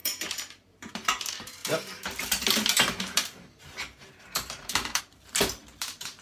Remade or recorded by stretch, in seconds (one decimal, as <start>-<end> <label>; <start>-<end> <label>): 0.0-6.2 remade